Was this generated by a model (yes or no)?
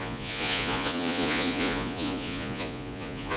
yes